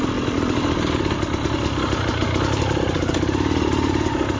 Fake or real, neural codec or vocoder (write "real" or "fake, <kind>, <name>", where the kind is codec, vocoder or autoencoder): real